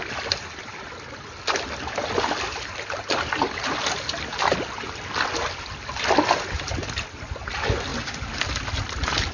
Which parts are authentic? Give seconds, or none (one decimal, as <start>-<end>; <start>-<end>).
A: 0.0-9.3